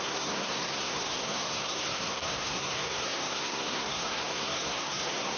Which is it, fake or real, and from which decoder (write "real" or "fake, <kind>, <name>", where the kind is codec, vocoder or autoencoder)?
fake, codec, SNAC